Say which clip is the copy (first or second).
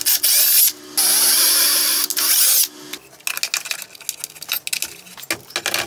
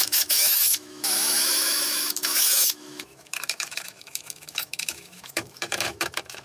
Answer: second